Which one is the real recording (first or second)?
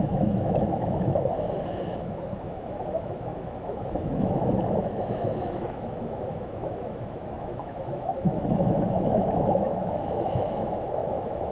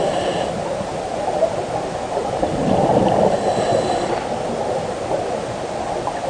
second